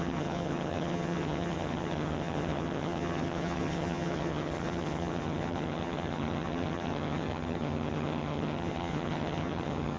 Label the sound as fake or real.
fake